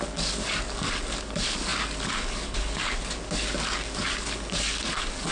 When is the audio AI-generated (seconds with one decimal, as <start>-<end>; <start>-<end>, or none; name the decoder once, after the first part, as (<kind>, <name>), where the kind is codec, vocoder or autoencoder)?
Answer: 0.0-5.3 (codec, DAC)